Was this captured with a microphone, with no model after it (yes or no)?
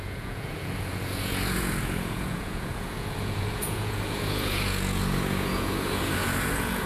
no